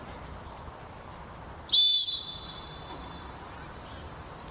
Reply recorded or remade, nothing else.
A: recorded